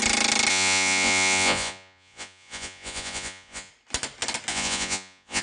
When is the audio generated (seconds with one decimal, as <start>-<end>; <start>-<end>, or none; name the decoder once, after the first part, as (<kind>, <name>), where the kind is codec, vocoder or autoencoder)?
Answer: 0.5-3.7 (vocoder, Vocos); 4.5-5.4